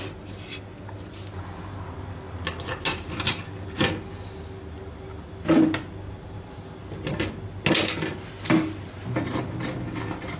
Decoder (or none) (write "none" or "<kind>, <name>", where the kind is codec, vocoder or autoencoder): none